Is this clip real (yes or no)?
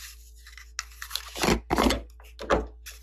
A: yes